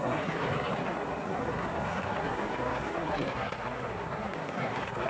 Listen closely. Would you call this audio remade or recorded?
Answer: remade